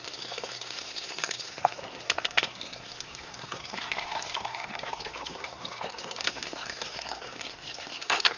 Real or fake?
fake